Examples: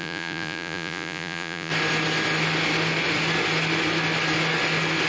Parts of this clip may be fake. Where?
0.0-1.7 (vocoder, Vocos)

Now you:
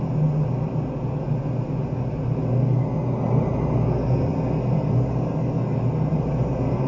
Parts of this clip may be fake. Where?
none

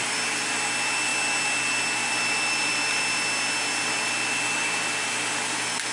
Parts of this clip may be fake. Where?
none

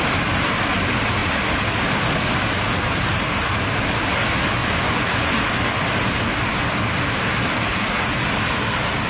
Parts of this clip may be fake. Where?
4.6-5.4 (vocoder, Vocos)